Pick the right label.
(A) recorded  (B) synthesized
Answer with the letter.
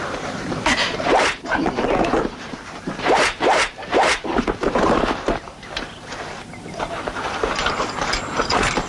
B